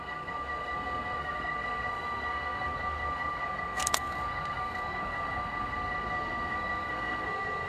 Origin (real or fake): fake